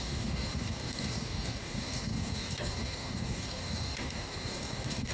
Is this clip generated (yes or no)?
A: yes